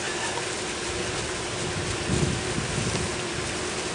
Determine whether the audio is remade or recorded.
recorded